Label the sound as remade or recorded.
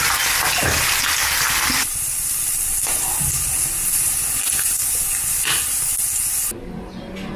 recorded